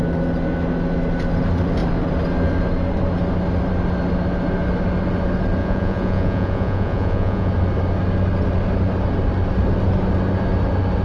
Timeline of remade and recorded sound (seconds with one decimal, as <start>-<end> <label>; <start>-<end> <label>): 0.0-5.6 recorded; 5.6-7.5 remade; 7.5-11.0 recorded